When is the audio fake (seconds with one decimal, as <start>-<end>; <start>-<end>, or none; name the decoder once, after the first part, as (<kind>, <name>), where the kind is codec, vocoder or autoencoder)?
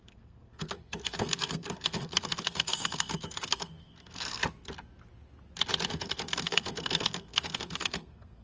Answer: 0.0-4.4 (codec, SNAC); 5.9-8.4